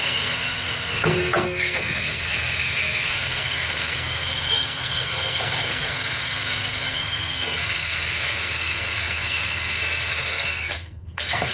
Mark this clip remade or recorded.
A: remade